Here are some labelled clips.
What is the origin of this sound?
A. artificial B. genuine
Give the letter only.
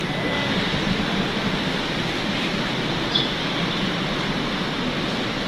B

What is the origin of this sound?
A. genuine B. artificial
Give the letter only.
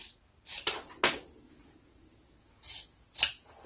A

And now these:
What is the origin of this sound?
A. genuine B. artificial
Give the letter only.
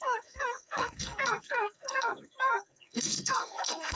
B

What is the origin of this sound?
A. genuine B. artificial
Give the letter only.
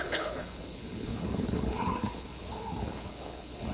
B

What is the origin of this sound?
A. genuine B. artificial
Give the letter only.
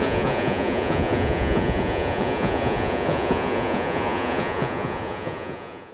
B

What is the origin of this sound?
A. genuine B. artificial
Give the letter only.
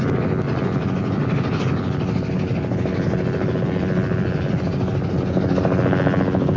A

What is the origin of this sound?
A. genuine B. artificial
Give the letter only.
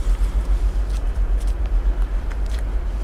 B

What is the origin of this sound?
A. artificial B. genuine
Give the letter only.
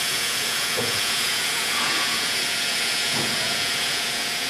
A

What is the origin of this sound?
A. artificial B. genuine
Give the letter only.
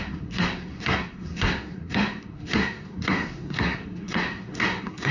A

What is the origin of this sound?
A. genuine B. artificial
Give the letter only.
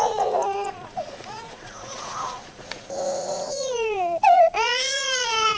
B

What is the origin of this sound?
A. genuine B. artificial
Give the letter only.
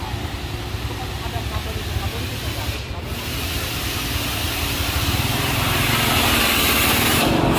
A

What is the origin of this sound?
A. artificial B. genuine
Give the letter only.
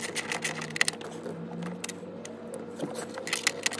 B